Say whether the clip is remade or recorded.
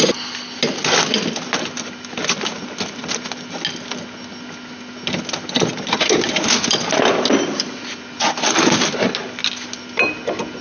recorded